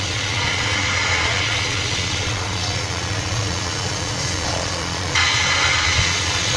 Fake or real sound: fake